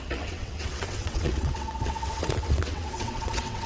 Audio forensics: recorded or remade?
remade